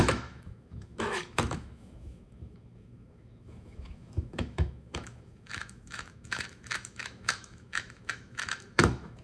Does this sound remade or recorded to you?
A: remade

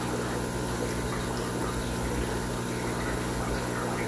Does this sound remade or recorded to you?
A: recorded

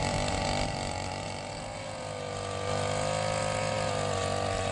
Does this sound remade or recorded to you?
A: recorded